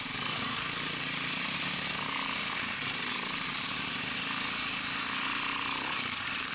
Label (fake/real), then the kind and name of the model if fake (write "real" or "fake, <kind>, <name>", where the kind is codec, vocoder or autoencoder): real